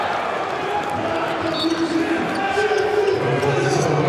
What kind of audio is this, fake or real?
real